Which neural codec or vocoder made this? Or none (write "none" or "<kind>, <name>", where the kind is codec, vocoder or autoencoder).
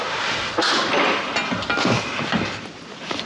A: none